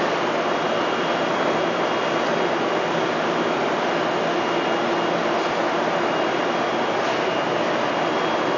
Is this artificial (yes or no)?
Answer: no